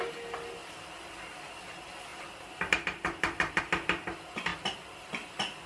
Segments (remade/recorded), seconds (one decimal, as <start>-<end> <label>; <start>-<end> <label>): 0.0-0.6 recorded; 0.6-1.7 remade; 1.7-2.1 recorded; 2.1-3.6 remade; 3.6-4.5 recorded; 4.5-5.0 remade; 5.0-5.7 recorded